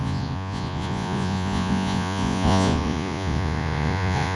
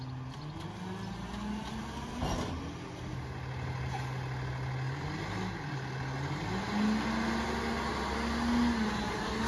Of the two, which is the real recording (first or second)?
second